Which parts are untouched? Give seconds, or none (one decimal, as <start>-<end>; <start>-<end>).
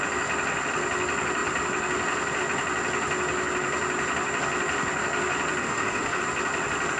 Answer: 0.0-5.6; 6.2-7.0